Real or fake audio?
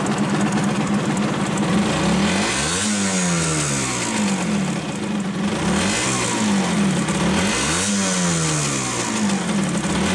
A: real